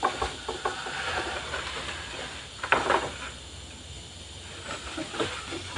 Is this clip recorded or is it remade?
recorded